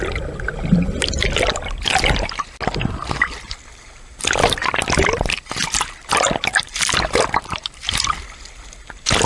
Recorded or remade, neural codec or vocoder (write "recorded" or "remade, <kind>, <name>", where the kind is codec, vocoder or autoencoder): recorded